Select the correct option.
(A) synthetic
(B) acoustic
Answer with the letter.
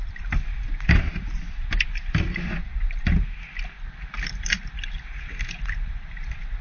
B